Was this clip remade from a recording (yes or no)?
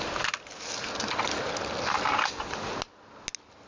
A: no